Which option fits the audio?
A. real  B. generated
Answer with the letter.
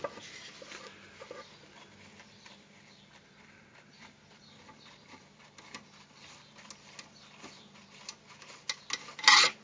A